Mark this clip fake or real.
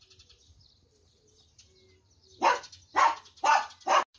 real